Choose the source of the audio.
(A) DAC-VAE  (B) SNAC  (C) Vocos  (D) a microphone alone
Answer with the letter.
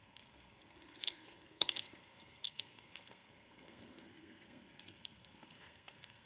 B